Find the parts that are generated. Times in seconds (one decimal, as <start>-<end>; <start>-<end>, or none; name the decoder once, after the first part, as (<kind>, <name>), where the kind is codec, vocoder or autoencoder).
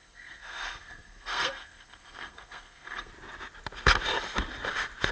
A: 0.0-3.1 (codec, SNAC)